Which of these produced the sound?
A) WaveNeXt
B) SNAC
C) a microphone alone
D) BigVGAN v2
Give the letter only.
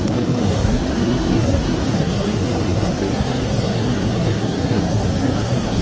B